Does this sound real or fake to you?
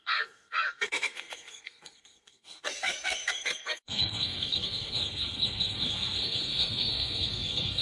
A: fake